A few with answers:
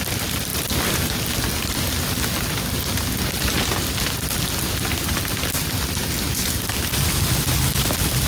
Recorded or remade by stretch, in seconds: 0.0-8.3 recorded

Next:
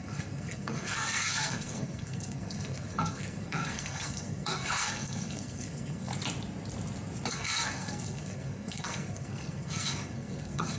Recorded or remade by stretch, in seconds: 0.0-6.1 remade; 6.1-7.3 recorded; 7.3-10.8 remade

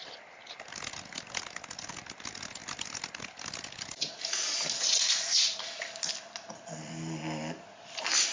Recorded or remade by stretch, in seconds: 0.0-8.3 recorded